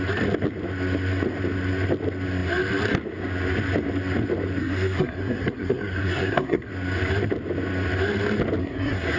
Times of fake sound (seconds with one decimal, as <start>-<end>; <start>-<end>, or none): 4.6-6.7; 8.6-9.2